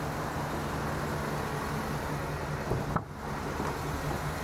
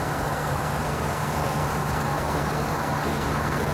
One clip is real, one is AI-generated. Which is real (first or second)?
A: first